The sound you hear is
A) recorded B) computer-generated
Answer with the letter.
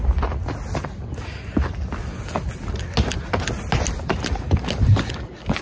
A